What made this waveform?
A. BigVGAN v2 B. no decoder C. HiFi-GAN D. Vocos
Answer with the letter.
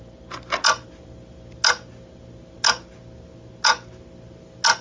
B